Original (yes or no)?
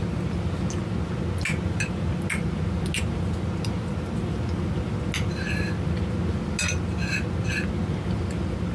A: yes